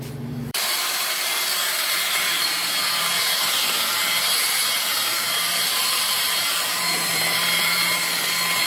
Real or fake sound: fake